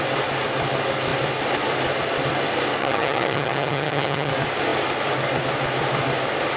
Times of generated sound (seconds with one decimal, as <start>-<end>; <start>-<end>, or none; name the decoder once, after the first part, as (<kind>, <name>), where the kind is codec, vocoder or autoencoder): 2.8-4.3 (vocoder, HiFi-GAN)